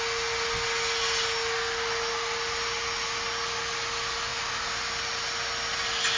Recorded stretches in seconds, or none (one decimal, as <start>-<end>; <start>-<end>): 0.0-6.2